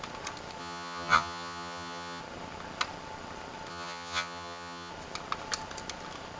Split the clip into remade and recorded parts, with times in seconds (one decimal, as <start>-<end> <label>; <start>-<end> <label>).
0.0-0.6 recorded; 0.6-2.2 remade; 2.2-3.7 recorded; 3.7-4.9 remade; 4.9-6.4 recorded